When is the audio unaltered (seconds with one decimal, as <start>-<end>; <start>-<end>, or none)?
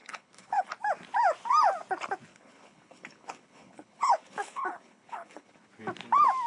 0.7-2.3; 5.7-6.5